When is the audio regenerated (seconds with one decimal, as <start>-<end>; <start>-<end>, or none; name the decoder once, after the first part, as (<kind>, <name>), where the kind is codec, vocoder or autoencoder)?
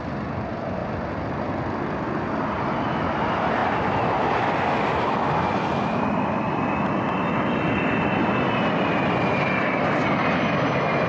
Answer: none